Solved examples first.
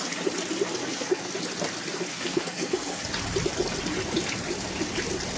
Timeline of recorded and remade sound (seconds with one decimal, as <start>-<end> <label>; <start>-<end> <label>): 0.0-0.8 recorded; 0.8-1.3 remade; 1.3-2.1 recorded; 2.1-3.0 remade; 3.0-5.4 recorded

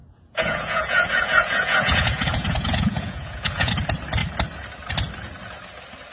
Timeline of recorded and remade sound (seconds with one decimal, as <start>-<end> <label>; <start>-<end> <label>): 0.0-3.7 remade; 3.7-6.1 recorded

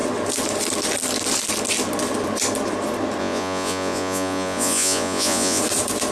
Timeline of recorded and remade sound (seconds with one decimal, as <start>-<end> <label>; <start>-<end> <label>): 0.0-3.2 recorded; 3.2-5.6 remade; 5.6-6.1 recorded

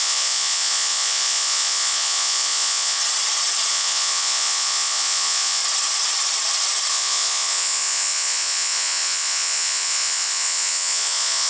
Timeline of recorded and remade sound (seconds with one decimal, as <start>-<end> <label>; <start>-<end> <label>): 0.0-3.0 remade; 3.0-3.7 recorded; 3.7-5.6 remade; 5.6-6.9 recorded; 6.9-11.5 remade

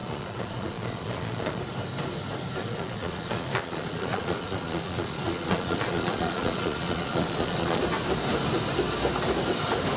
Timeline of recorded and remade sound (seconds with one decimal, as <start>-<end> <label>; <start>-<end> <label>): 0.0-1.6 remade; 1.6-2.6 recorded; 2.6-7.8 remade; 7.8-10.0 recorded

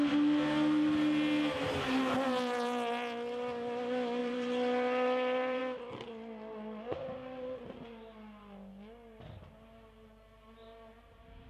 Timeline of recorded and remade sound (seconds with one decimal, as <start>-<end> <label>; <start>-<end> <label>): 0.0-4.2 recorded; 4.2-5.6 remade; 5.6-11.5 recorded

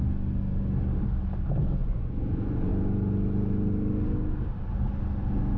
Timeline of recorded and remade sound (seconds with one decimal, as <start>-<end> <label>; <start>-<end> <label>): 0.0-1.8 recorded; 1.8-2.7 remade; 2.7-5.6 recorded

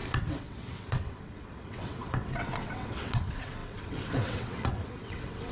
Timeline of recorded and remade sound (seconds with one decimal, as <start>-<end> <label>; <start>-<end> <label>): 0.0-5.5 remade